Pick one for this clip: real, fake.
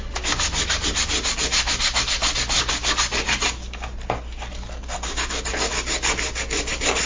real